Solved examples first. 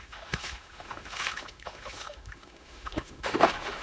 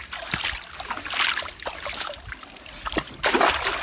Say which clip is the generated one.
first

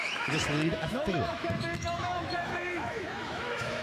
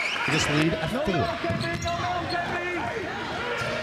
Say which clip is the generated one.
first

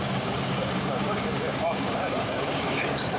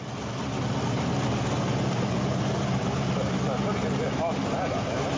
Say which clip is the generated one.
first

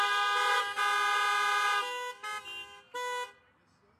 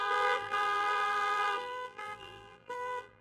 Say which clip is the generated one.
second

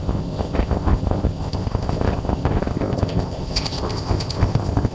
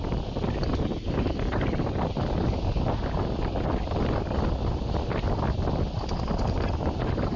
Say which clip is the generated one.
first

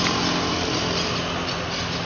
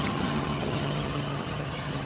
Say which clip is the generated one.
second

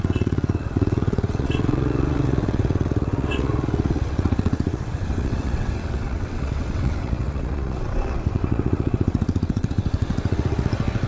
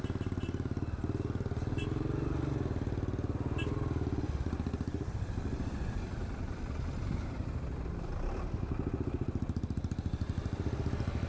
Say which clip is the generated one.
first